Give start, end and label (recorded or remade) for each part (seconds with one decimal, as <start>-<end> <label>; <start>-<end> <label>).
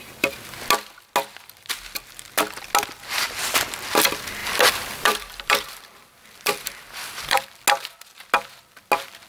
0.0-4.4 recorded; 4.4-7.6 remade; 7.6-9.3 recorded